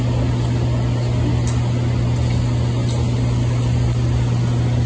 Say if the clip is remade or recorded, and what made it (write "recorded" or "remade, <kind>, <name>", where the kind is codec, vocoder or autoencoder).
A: recorded